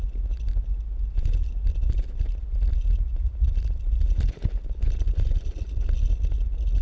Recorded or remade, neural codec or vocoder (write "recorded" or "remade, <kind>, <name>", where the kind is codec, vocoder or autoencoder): recorded